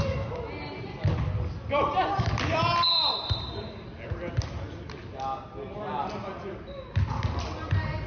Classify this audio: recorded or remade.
recorded